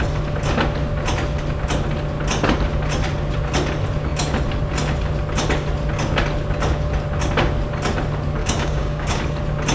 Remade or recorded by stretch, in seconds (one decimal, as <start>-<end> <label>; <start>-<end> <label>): 0.0-8.4 recorded; 8.4-9.2 remade; 9.2-9.7 recorded